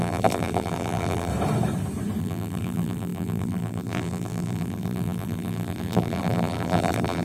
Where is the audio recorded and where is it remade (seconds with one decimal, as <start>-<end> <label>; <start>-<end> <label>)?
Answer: 0.0-1.3 remade; 1.3-2.2 recorded; 2.2-7.2 remade